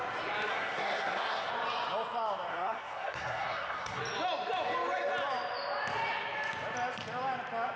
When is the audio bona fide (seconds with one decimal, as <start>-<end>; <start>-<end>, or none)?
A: 0.0-0.5; 1.5-2.5; 4.0-7.8